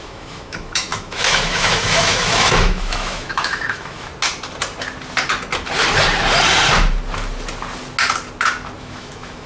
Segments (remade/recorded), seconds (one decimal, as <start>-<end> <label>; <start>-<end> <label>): 0.0-4.1 remade; 4.1-8.8 recorded; 8.8-9.5 remade